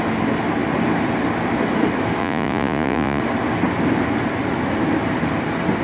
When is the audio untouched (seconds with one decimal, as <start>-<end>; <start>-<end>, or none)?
0.0-2.2; 3.2-5.8